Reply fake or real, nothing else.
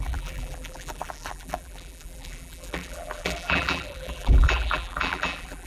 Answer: fake